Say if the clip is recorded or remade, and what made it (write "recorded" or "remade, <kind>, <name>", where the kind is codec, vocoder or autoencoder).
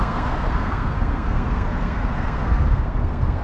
remade, codec, SNAC